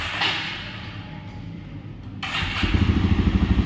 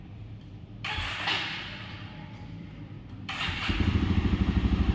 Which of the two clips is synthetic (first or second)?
second